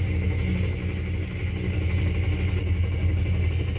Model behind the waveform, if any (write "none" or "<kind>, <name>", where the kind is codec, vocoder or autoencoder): none